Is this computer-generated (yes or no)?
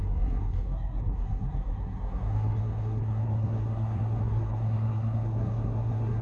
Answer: yes